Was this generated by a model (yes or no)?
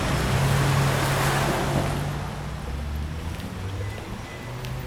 no